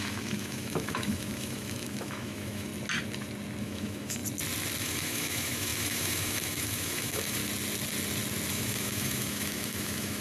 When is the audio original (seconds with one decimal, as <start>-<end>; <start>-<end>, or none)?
2.7-3.6; 4.2-4.8; 7.4-8.5